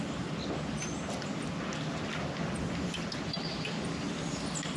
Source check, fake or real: real